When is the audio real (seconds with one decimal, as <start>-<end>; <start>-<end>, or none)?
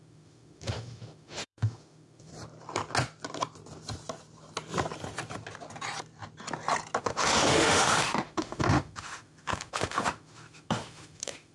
2.3-7.0